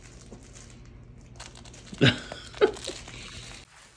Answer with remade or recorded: recorded